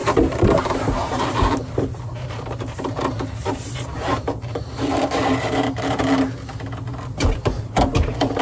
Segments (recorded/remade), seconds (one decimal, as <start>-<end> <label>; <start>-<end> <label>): 0.0-0.5 remade; 0.5-1.0 recorded; 1.0-6.0 remade; 6.0-6.9 recorded; 6.9-8.4 remade